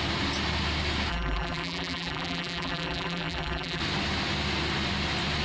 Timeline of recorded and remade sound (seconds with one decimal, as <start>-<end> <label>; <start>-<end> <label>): 0.0-1.1 recorded; 1.1-3.8 remade; 3.8-5.4 recorded